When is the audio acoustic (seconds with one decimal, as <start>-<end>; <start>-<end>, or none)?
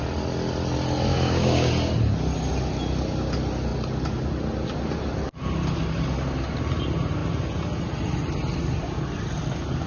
0.0-1.1; 1.7-9.9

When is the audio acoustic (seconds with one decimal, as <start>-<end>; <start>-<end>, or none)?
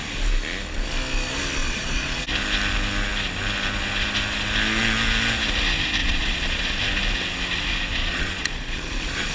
0.0-1.6; 2.2-6.0; 6.8-8.0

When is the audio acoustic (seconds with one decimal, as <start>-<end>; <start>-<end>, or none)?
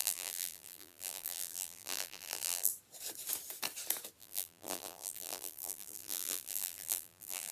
2.7-4.2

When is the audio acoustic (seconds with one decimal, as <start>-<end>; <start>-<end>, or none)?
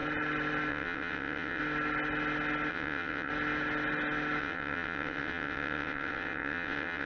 0.0-0.7; 1.6-2.7; 3.3-4.4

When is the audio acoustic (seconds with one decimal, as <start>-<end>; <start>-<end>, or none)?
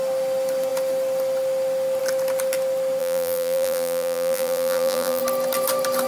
0.0-3.0; 5.2-6.1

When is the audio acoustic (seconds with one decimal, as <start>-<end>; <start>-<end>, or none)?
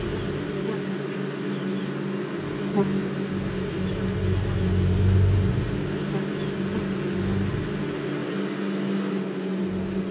0.0-10.1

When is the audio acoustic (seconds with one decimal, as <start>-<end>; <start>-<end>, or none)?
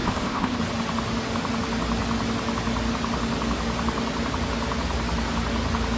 0.6-6.0